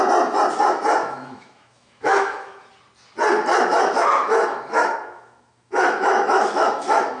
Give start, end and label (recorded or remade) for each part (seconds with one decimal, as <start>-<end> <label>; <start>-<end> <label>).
0.0-1.0 recorded; 1.0-2.7 remade; 2.7-3.5 recorded; 3.5-7.2 remade